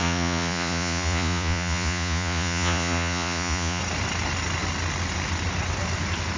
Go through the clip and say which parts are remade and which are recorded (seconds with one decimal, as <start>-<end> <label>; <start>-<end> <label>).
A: 0.0-3.8 remade; 3.8-6.4 recorded